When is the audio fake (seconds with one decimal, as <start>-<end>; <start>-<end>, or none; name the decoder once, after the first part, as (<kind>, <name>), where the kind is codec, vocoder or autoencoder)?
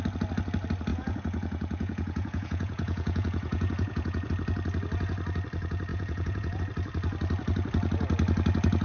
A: 0.9-4.3 (vocoder, Vocos); 5.9-6.6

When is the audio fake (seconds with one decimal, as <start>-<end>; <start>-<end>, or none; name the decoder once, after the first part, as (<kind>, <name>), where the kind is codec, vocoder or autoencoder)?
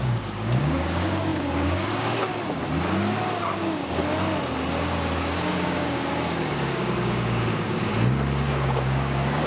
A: 0.0-2.3 (codec, DAC); 5.2-7.9; 8.5-9.5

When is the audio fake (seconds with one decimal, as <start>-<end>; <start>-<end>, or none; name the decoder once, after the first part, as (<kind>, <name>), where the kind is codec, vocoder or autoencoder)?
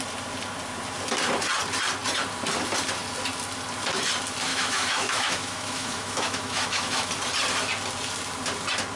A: 4.5-7.1 (autoencoder, DAC-VAE)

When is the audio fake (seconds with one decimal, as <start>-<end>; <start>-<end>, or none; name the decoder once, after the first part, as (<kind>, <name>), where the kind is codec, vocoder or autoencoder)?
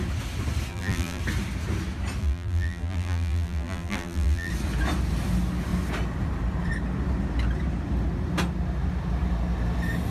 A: 0.7-1.2 (vocoder, BigVGAN v2); 2.2-4.5